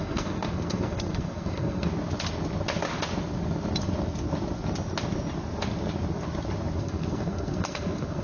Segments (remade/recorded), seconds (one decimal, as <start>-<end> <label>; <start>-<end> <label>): 0.0-1.9 remade; 1.9-6.8 recorded; 6.8-8.2 remade